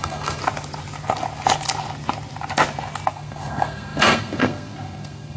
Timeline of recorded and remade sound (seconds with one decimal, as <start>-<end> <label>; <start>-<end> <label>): 0.0-0.4 remade; 0.4-3.1 recorded; 3.1-5.4 remade